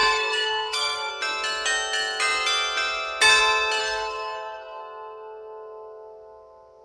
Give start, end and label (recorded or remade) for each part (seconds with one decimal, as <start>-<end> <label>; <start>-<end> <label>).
0.0-1.1 remade; 1.1-3.8 recorded; 3.8-4.8 remade; 4.8-6.8 recorded